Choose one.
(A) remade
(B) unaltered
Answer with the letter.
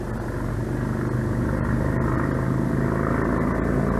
B